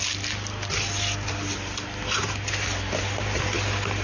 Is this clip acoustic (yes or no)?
yes